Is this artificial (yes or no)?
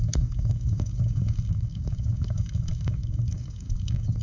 yes